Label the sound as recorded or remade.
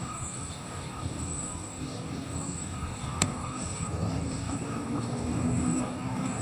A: remade